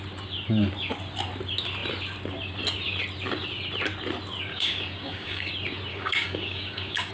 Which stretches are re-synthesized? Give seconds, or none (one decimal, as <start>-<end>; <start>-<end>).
4.5-5.5; 5.9-7.1